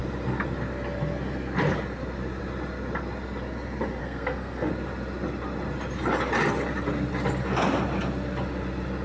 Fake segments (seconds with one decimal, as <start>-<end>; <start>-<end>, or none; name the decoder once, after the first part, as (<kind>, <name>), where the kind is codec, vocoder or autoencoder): 4.0-4.7 (codec, SNAC)